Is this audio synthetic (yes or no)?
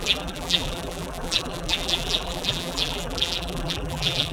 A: yes